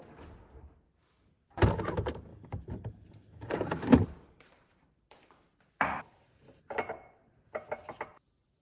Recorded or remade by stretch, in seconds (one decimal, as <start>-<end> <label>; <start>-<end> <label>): 0.0-2.3 recorded; 2.3-6.6 remade; 6.6-8.6 recorded